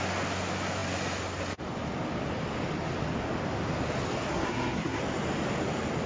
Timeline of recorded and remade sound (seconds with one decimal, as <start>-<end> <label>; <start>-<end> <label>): 0.0-4.3 recorded; 4.3-5.0 remade; 5.0-6.1 recorded